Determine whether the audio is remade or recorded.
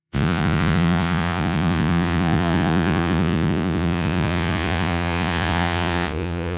remade